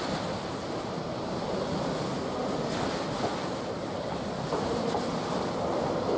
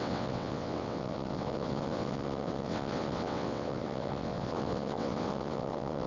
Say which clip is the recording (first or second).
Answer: first